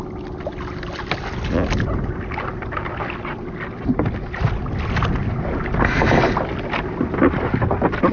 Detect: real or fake real